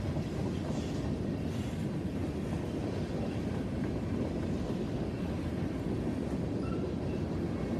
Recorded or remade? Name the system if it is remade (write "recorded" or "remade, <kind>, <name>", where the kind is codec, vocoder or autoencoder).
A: recorded